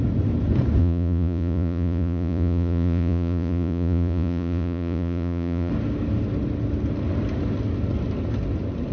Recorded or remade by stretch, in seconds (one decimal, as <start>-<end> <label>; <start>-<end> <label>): 0.0-0.8 recorded; 0.8-5.7 remade; 5.7-8.9 recorded